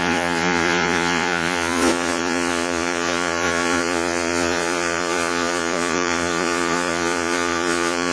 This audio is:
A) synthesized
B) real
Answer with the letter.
A